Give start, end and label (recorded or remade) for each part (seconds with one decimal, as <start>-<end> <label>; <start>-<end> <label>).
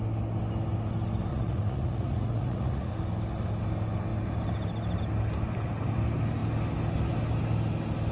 0.0-1.3 recorded; 1.3-2.9 remade; 2.9-8.1 recorded